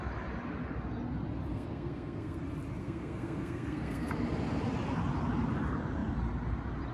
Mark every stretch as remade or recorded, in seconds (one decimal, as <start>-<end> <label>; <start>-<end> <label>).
0.0-1.5 recorded; 1.5-2.4 remade; 2.4-2.8 recorded; 2.8-4.1 remade; 4.1-6.9 recorded